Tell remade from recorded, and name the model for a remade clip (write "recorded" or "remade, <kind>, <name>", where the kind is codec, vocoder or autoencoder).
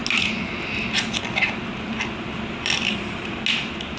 recorded